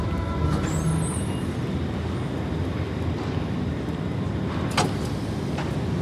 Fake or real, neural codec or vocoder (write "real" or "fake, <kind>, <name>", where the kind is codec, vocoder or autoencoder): real